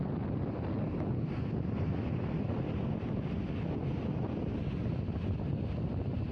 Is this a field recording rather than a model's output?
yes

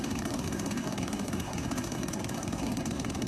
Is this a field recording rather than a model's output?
no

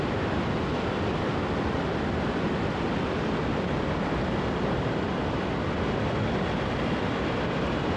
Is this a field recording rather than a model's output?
yes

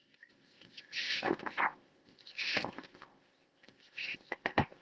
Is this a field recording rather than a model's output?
no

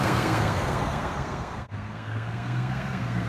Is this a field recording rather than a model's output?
no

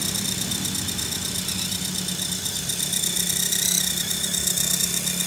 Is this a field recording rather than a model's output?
yes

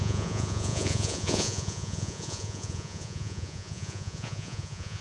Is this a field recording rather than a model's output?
no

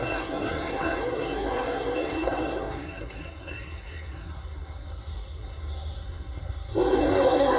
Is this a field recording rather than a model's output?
no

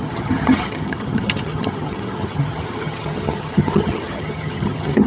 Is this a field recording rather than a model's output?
no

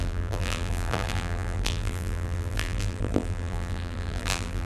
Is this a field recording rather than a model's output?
no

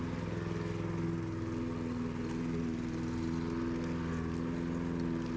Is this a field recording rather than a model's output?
yes